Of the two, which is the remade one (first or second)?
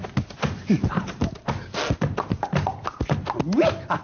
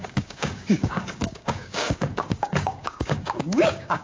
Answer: second